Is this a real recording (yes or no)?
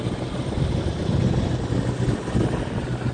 yes